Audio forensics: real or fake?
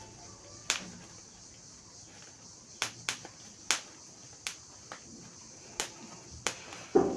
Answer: real